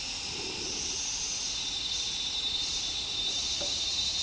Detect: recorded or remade recorded